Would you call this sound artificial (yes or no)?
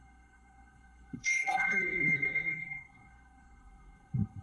yes